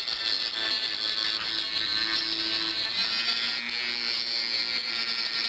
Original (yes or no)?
yes